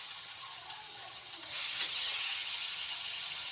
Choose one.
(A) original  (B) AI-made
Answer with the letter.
B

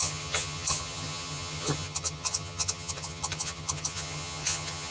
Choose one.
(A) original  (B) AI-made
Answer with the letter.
B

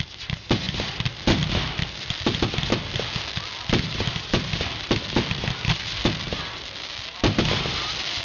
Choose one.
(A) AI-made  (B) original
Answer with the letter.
B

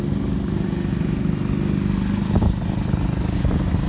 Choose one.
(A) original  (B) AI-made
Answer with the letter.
A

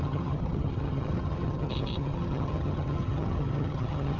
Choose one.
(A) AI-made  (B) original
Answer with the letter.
A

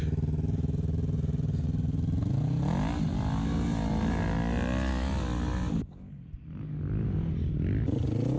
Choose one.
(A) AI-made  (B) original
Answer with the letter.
B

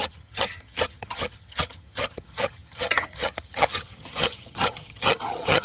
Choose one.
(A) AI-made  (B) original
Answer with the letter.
A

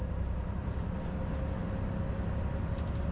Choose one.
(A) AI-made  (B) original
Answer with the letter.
B